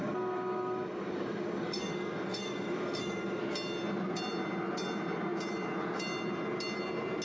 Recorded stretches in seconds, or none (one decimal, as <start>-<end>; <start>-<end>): 3.4-7.2